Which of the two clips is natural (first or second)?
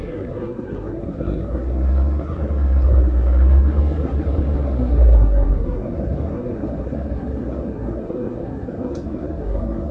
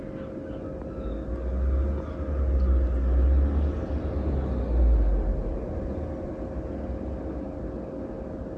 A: second